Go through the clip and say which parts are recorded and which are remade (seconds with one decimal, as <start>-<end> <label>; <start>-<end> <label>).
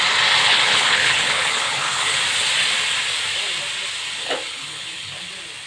0.0-0.5 recorded; 0.5-2.2 remade; 2.2-4.2 recorded; 4.2-5.3 remade; 5.3-5.7 recorded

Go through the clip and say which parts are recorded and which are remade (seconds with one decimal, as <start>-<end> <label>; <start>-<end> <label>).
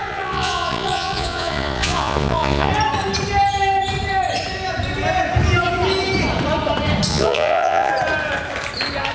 0.0-2.7 remade; 2.7-7.1 recorded; 7.1-7.9 remade; 7.9-9.1 recorded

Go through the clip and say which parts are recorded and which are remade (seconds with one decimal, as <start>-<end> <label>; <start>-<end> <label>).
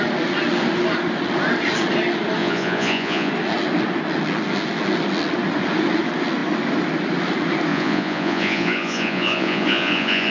0.0-2.4 recorded; 2.4-3.3 remade; 3.3-7.7 recorded; 7.7-10.3 remade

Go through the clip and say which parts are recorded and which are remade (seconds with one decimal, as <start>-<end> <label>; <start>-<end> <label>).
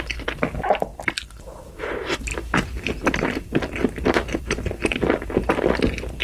0.0-6.2 recorded